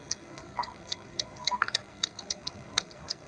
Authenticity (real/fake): fake